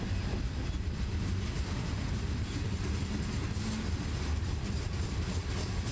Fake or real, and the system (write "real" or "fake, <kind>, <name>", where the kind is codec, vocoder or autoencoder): real